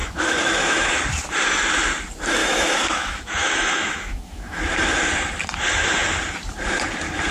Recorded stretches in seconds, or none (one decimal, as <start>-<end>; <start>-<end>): 0.9-2.4; 4.7-7.3